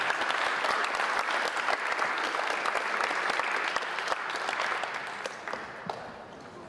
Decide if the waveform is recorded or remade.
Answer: recorded